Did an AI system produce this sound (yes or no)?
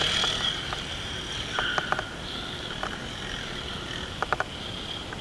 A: no